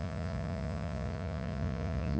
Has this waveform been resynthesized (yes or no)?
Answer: yes